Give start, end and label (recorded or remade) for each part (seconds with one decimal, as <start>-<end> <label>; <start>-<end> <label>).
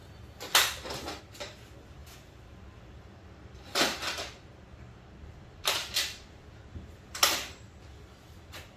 0.0-1.2 recorded; 1.2-8.8 remade